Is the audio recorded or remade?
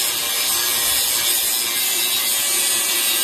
recorded